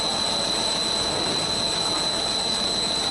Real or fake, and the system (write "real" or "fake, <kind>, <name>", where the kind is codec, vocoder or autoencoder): real